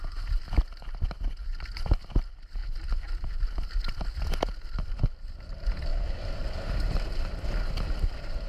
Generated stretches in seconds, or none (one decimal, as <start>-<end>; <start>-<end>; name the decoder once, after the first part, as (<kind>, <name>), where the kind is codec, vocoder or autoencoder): 0.0-5.9 (vocoder, BigVGAN v2)